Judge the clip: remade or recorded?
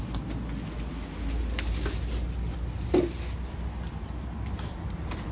recorded